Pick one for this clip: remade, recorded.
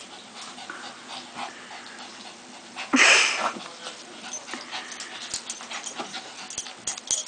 recorded